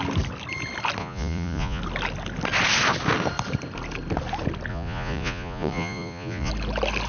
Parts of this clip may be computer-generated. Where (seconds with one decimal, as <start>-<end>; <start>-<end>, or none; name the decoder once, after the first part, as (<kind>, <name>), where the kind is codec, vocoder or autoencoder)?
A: 1.0-1.8 (vocoder, Vocos); 4.7-6.5